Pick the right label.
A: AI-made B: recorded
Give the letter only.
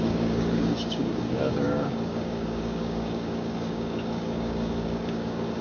A